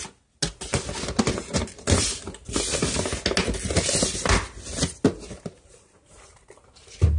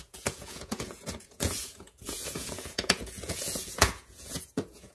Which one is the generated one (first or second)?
second